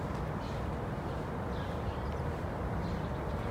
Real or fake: real